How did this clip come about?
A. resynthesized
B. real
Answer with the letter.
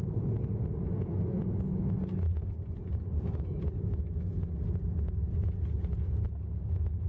B